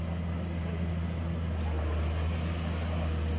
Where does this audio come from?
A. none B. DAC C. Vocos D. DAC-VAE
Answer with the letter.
A